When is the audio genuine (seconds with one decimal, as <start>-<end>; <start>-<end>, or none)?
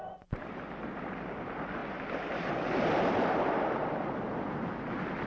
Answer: 0.5-5.3